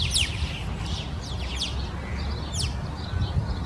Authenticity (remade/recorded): recorded